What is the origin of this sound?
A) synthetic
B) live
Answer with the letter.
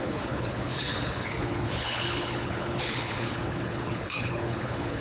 A